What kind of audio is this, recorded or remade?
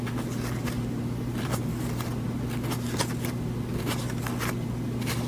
recorded